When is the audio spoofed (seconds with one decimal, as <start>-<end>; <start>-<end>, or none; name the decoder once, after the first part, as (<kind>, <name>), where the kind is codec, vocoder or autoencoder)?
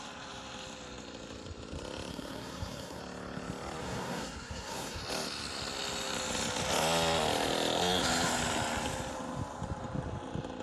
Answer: 2.1-3.0 (codec, SNAC); 3.8-5.0